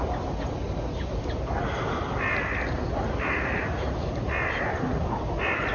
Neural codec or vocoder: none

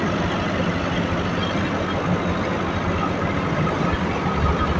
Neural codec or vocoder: none